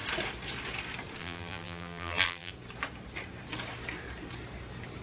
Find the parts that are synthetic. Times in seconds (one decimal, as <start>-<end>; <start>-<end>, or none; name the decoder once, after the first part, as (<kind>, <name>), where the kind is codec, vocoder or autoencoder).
1.2-2.5 (vocoder, BigVGAN v2)